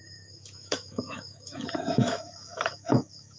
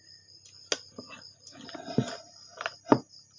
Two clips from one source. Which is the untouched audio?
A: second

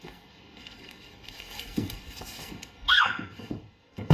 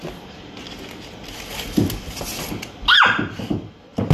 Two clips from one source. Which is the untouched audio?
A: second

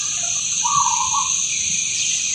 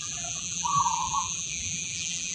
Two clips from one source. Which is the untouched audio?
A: first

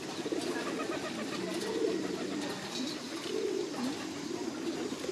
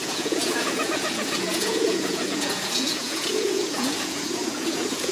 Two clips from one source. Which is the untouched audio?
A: first